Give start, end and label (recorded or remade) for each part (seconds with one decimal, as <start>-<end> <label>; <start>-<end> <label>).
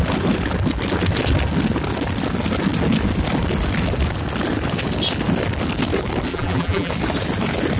0.0-6.3 recorded; 6.3-6.9 remade; 6.9-7.8 recorded